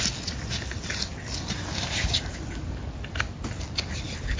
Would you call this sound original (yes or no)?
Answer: yes